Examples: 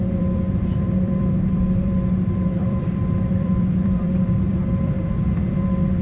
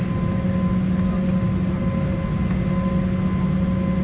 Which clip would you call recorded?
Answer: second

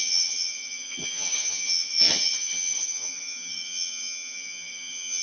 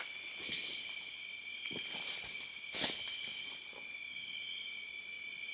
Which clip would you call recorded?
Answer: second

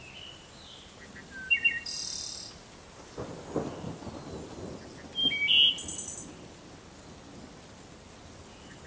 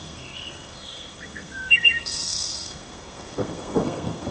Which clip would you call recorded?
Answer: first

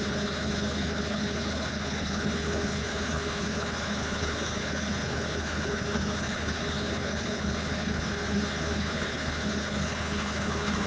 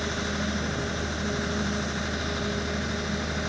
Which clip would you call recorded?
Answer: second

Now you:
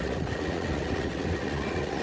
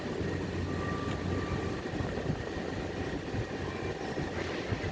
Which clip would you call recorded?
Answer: second